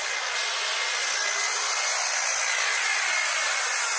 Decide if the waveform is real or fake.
real